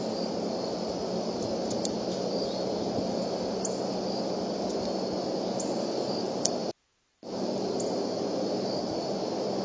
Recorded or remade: recorded